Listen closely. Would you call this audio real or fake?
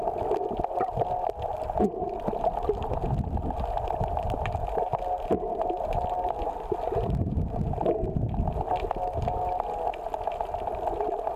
real